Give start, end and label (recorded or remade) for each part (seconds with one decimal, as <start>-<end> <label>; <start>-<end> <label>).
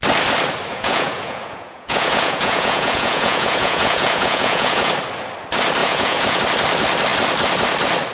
0.0-0.7 recorded; 0.7-4.9 remade; 4.9-5.8 recorded; 5.8-6.4 remade; 6.4-8.1 recorded